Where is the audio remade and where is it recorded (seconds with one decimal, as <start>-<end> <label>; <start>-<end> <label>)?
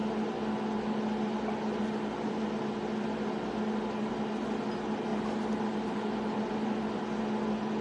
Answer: 0.0-7.8 recorded